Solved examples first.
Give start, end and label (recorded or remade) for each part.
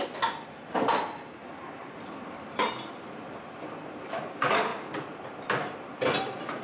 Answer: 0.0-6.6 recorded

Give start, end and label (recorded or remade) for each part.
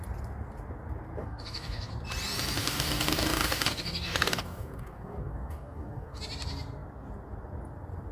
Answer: 0.0-1.2 recorded; 1.2-1.9 remade; 1.9-2.6 recorded; 2.6-6.2 remade; 6.2-8.1 recorded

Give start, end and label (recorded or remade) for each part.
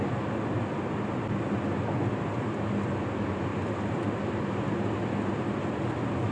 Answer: 0.0-6.3 recorded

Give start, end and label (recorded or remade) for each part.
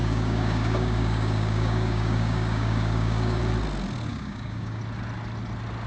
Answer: 0.0-3.4 remade; 3.4-4.1 recorded; 4.1-4.8 remade; 4.8-5.9 recorded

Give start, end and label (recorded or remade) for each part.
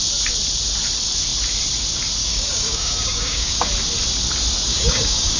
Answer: 0.0-2.2 recorded; 2.2-3.6 remade; 3.6-4.7 recorded; 4.7-5.4 remade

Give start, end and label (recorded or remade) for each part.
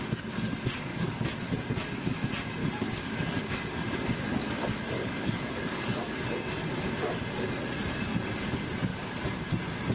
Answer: 0.0-0.9 recorded; 0.9-1.5 remade; 1.5-2.6 recorded; 2.6-6.3 remade; 6.3-8.9 recorded; 8.9-9.5 remade; 9.5-9.9 recorded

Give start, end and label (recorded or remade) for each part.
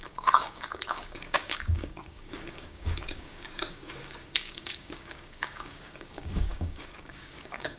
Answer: 0.0-7.8 remade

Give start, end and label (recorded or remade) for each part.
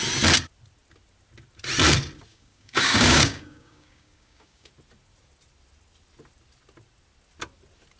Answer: 0.0-2.3 recorded; 2.3-4.7 remade; 4.7-8.0 recorded